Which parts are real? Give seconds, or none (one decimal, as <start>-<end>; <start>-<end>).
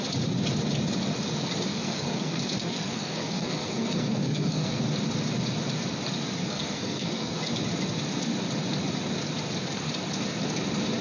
0.0-1.7; 4.8-6.4; 7.4-11.0